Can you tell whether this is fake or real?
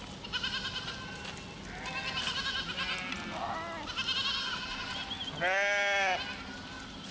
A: real